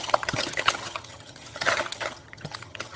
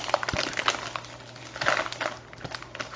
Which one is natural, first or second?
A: second